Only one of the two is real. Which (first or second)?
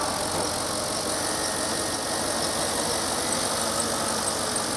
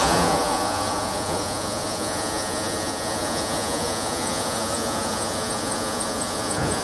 first